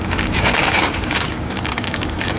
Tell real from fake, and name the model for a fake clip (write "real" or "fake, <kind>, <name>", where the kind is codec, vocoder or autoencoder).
fake, codec, DAC